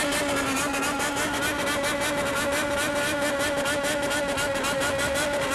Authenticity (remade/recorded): recorded